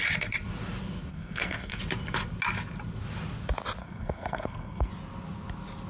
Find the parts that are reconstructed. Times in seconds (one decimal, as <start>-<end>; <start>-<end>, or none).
1.1-1.8; 3.8-4.9